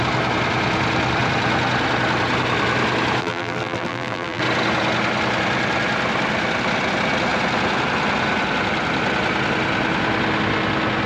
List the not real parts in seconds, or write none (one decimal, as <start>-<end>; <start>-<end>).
3.2-4.4